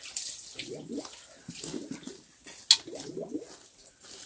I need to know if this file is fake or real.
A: real